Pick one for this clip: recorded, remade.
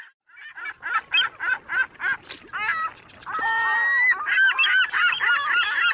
recorded